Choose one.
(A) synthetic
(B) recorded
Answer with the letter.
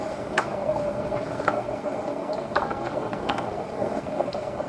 A